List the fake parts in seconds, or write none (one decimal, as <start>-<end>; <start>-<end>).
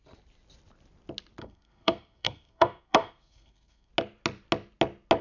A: 1.4-3.9